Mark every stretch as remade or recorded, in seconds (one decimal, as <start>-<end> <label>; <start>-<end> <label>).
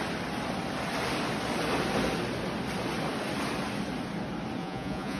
0.0-4.6 recorded; 4.6-5.2 remade